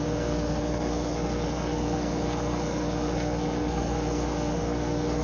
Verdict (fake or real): fake